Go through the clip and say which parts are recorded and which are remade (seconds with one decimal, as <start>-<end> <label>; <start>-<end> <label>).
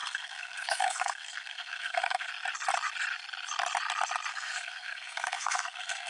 0.0-2.3 remade; 2.3-4.3 recorded; 4.3-6.1 remade